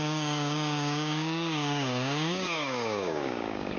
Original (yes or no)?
no